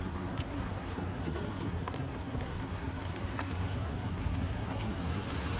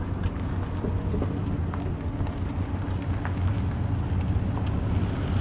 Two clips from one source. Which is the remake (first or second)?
first